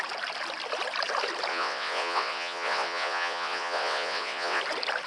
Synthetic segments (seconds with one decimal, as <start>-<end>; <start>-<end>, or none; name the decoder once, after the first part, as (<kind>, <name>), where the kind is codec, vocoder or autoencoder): 1.5-4.6 (vocoder, WaveNeXt)